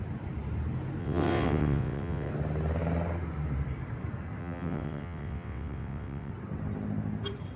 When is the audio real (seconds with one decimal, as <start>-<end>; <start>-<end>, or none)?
0.0-1.0; 2.3-4.4; 6.3-7.6